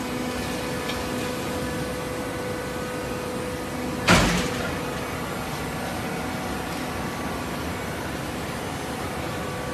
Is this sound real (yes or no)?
yes